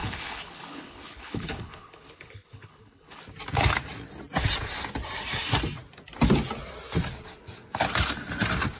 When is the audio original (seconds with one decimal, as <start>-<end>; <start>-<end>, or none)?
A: 3.2-8.8